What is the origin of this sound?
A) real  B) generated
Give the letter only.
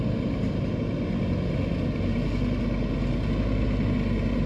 A